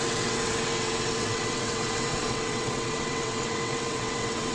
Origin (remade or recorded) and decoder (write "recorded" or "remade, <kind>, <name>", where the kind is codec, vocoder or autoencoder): remade, vocoder, WaveNeXt